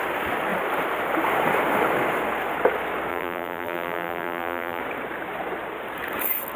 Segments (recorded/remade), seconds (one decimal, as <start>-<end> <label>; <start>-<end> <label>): 0.0-3.1 recorded; 3.1-4.8 remade; 4.8-6.6 recorded